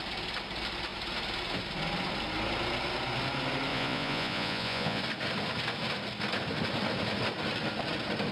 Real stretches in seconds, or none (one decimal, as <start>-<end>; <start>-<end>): 0.0-3.7; 5.0-8.3

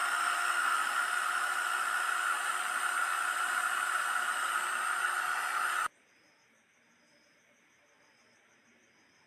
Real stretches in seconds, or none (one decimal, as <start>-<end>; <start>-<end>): 0.0-9.3

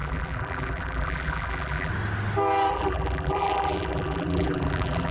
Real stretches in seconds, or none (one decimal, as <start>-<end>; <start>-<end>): 1.9-2.7

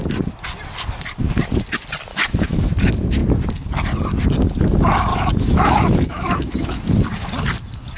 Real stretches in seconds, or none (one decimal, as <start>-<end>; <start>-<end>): 0.0-2.1; 2.7-5.1; 6.8-8.0

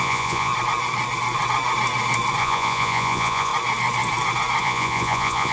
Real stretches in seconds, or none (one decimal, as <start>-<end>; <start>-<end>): 0.5-2.4; 3.5-4.6

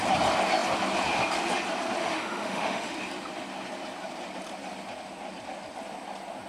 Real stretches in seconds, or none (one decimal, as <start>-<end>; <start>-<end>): 0.0-2.0; 2.9-6.5

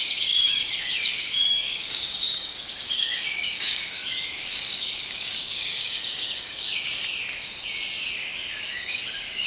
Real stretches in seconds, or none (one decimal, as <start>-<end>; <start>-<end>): 7.0-8.2